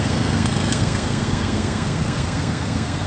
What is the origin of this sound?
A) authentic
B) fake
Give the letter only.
B